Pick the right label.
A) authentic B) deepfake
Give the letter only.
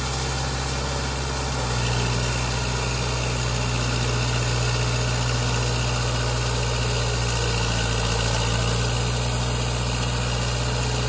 A